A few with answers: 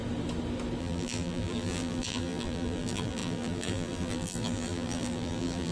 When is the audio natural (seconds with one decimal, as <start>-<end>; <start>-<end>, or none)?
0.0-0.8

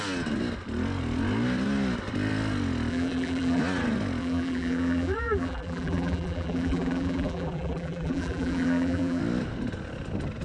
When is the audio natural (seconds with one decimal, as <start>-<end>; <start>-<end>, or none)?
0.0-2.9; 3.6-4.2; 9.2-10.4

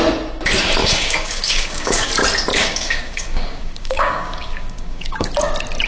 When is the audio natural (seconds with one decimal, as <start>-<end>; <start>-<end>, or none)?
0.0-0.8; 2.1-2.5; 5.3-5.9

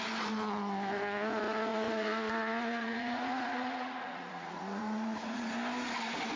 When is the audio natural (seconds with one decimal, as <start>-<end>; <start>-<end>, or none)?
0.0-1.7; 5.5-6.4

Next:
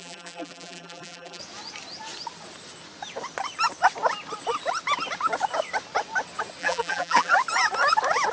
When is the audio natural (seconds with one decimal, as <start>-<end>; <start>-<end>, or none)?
1.4-6.6; 7.3-8.3